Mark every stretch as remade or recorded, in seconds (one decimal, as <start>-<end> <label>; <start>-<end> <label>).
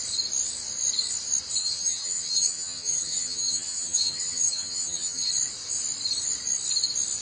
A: 0.0-1.6 recorded; 1.6-5.3 remade; 5.3-7.2 recorded